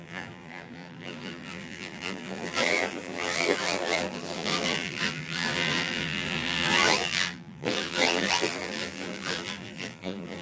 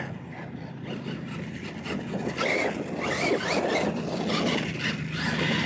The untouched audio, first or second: second